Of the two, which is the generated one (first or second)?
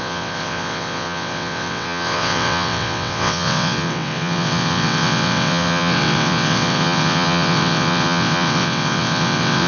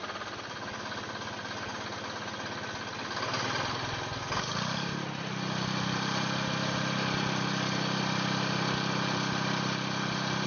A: first